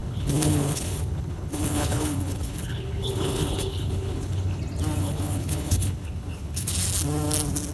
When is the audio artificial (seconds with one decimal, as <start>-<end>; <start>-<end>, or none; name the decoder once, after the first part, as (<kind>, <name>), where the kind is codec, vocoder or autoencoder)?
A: 0.0-4.6 (codec, HILCodec); 5.0-6.7